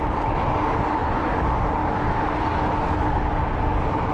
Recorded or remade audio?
recorded